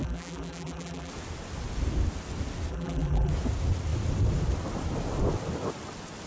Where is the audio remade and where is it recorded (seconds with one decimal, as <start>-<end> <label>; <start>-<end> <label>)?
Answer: 0.0-1.1 remade; 1.1-2.7 recorded; 2.7-3.3 remade; 3.3-6.3 recorded